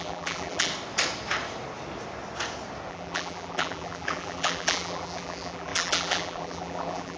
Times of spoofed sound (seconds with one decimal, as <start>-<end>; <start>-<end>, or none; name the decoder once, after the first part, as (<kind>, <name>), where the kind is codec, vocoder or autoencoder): 0.0-0.7 (vocoder, BigVGAN v2); 2.9-7.2